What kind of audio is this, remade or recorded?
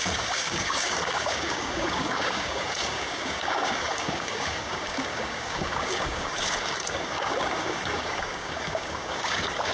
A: remade